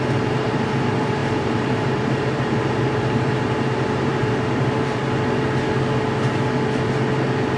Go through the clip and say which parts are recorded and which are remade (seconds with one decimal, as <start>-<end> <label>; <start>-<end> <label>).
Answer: 0.0-5.0 remade; 5.0-7.6 recorded

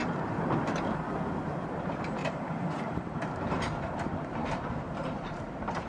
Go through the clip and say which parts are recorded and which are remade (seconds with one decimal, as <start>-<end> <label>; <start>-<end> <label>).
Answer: 0.0-1.0 remade; 1.0-2.2 recorded; 2.2-5.9 remade

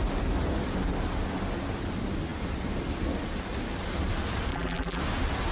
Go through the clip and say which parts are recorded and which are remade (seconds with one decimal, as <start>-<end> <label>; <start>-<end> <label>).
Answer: 0.0-4.5 recorded; 4.5-5.0 remade; 5.0-5.5 recorded